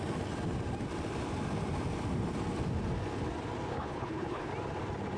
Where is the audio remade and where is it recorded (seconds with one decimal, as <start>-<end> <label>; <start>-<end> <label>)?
0.0-3.7 recorded; 3.7-4.5 remade; 4.5-5.2 recorded